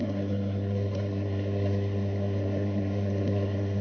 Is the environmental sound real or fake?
fake